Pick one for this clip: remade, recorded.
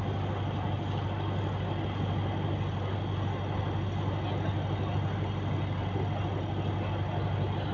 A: recorded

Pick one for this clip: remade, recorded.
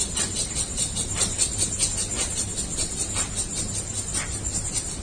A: recorded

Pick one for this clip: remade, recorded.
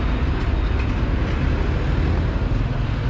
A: recorded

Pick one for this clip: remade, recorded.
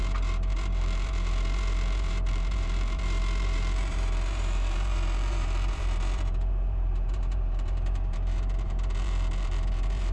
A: remade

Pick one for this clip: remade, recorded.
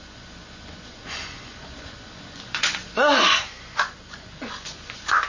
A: remade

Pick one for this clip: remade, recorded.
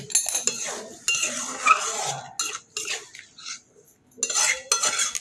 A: recorded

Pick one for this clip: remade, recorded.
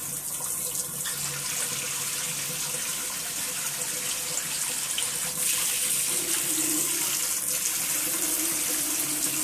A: recorded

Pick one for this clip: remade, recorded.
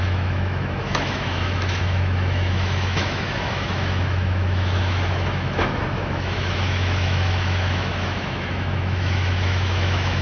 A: remade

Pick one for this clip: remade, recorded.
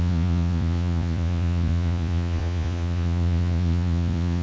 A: remade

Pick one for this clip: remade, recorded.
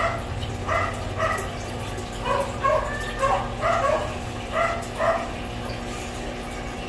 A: recorded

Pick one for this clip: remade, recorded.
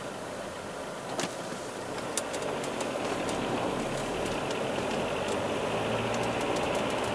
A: recorded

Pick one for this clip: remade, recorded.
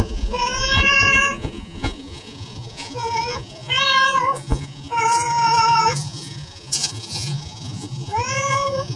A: remade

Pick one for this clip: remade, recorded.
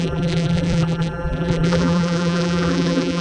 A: remade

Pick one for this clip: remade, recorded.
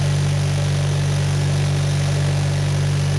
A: recorded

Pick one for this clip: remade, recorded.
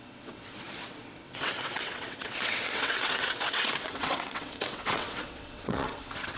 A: remade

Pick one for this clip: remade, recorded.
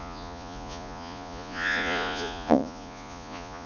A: remade